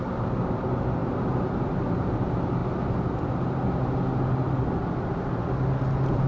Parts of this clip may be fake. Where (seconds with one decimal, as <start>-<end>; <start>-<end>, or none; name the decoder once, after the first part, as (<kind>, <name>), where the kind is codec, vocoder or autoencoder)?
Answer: none